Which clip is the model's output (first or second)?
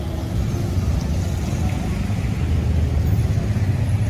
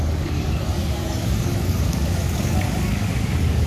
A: second